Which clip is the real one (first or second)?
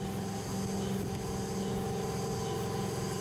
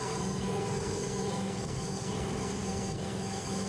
first